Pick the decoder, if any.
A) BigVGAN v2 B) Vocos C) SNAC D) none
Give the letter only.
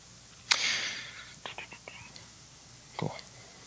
D